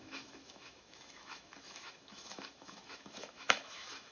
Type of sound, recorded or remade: remade